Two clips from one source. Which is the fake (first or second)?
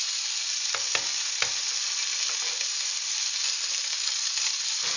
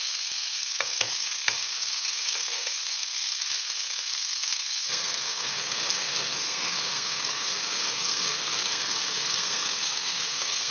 second